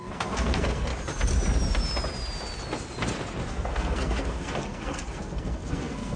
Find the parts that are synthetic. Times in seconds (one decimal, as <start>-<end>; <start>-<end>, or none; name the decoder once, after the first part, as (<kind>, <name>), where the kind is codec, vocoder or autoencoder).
0.0-0.9 (codec, SNAC); 3.5-6.2